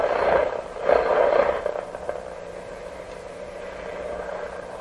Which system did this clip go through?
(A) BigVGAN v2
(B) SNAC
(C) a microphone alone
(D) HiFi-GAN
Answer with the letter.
A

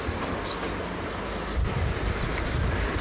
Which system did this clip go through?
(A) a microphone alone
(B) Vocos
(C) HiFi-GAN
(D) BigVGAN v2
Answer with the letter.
A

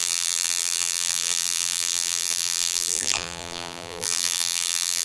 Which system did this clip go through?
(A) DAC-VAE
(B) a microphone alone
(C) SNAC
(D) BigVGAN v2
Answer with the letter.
D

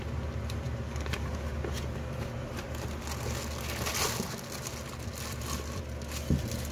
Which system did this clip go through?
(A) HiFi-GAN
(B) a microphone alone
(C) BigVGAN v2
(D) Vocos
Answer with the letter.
B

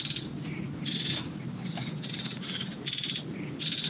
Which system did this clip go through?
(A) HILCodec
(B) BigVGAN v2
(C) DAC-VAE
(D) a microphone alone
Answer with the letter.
D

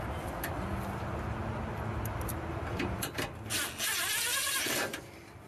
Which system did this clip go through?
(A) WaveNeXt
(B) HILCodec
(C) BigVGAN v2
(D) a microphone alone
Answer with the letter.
D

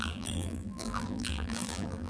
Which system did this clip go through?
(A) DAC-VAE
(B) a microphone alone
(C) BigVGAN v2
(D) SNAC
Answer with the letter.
C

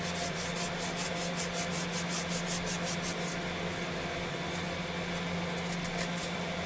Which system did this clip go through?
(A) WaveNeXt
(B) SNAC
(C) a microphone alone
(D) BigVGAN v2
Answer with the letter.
C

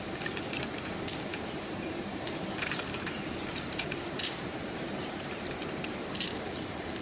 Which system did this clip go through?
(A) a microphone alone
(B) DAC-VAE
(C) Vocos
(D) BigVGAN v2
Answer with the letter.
D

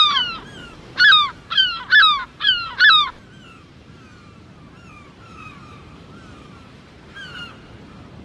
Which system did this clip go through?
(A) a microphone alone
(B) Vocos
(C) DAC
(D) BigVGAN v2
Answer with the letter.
D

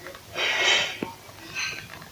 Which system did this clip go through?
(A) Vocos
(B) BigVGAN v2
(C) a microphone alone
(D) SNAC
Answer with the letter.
C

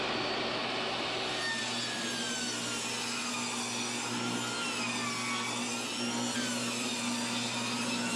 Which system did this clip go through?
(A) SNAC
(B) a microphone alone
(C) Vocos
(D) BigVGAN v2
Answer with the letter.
B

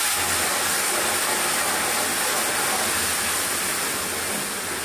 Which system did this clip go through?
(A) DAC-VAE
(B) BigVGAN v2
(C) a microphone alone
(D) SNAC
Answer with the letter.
C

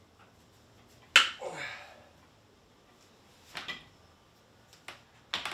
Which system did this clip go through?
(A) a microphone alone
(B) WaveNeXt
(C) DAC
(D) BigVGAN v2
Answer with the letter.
A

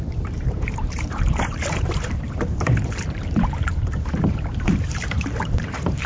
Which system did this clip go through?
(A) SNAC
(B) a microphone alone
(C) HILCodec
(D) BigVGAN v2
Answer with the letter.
D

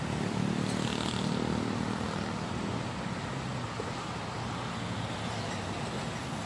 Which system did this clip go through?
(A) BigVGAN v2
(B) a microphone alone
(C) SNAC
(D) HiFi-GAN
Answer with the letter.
B